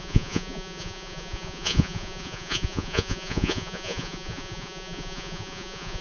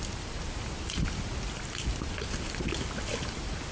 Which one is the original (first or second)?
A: second